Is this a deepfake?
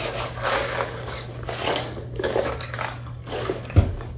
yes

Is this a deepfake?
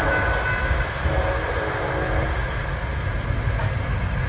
no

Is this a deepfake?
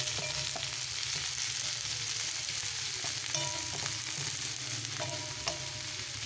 no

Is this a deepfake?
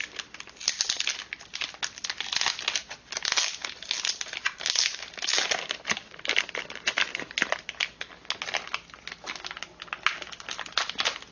no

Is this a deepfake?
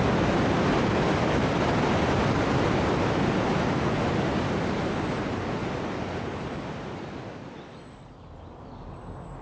no